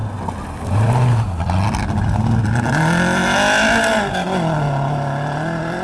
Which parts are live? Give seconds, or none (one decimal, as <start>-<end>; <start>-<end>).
0.0-5.8